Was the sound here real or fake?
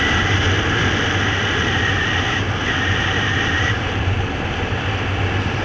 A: real